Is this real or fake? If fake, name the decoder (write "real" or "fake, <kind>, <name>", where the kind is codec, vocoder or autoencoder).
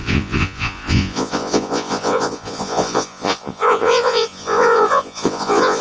fake, vocoder, Vocos